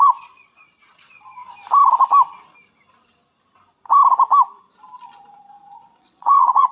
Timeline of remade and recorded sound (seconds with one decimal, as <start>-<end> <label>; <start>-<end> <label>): 0.0-1.4 remade; 1.4-5.4 recorded; 5.4-6.7 remade